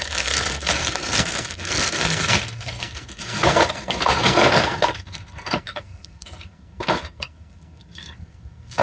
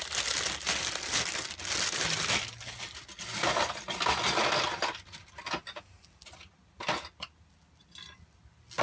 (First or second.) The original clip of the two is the second